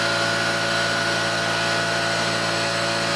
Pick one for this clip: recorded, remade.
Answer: recorded